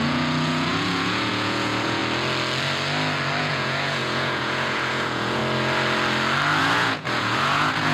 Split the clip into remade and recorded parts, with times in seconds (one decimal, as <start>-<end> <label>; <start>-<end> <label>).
0.0-2.0 remade; 2.0-3.4 recorded; 3.4-5.4 remade; 5.4-6.6 recorded; 6.6-7.9 remade